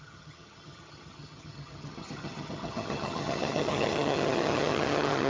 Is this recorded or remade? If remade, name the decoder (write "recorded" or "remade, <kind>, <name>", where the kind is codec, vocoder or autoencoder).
remade, vocoder, HiFi-GAN